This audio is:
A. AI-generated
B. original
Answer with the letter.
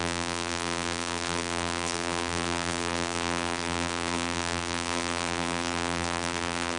A